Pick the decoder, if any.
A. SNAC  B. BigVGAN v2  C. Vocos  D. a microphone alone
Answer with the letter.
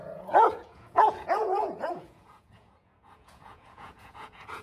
C